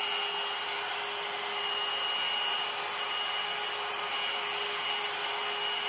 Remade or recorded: recorded